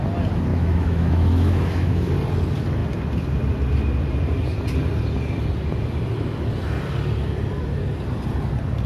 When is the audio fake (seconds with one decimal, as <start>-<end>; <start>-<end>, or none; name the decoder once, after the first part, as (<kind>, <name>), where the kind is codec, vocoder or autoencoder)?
0.5-2.1 (autoencoder, DAC-VAE)